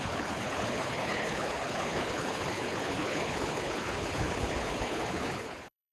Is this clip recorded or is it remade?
remade